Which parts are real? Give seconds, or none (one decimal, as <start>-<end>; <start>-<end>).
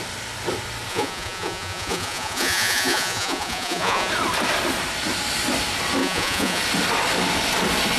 0.0-0.9; 4.1-6.0; 6.6-8.0